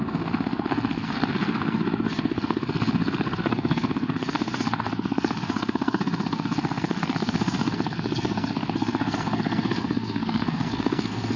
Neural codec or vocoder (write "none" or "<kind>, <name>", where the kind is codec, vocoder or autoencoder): codec, SNAC